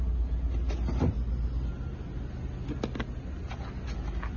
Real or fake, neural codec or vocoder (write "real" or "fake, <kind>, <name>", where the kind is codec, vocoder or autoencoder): real